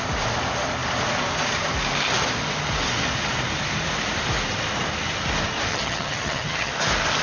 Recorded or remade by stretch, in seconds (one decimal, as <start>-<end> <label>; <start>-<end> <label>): 0.0-5.7 recorded; 5.7-6.7 remade; 6.7-7.2 recorded